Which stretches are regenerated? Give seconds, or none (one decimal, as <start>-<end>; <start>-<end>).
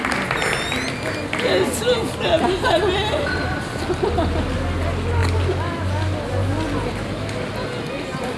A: none